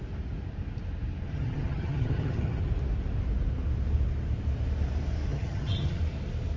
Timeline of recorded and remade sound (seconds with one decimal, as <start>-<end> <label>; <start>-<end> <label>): 0.0-1.3 recorded; 1.3-2.6 remade; 2.6-5.3 recorded; 5.3-6.0 remade; 6.0-6.6 recorded